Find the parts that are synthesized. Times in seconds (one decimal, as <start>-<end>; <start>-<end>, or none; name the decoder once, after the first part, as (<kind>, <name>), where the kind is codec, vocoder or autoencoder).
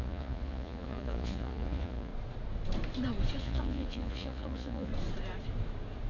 0.0-2.1 (vocoder, Vocos); 3.4-4.9